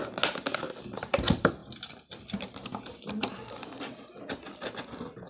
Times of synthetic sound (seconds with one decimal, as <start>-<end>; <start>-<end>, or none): none